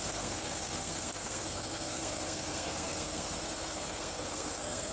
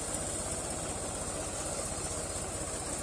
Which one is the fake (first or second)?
first